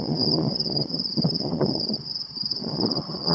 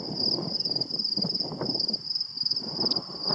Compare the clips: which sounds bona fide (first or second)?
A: second